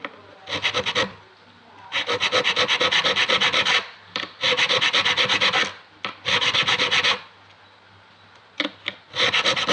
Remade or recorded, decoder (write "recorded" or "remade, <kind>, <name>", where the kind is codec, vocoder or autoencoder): recorded